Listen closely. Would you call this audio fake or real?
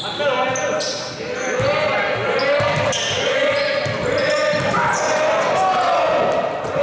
real